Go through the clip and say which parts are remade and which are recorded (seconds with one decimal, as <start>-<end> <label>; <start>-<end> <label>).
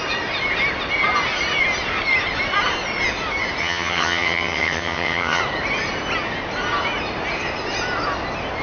0.0-3.6 recorded; 3.6-5.4 remade; 5.4-8.6 recorded